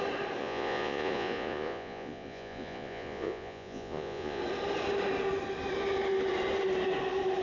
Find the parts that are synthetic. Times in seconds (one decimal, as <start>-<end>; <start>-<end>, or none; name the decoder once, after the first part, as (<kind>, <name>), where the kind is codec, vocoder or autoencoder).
0.4-4.4 (vocoder, Vocos)